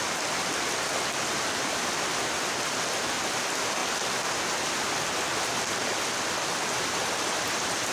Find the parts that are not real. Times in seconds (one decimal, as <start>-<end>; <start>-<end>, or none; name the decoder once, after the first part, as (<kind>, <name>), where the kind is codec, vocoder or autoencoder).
none